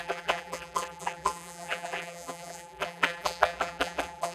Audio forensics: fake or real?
fake